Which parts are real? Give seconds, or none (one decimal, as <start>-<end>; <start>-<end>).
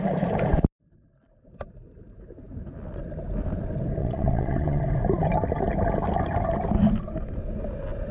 0.0-4.0; 4.8-8.1